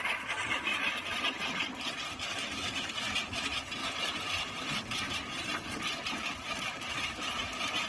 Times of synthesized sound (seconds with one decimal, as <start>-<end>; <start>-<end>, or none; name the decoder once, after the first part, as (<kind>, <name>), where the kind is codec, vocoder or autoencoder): 0.0-0.7 (vocoder, BigVGAN v2); 1.2-3.8; 6.6-7.9